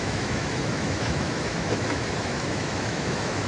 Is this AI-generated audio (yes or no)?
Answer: yes